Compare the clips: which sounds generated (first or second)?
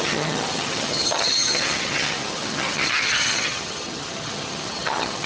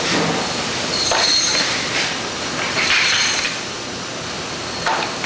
first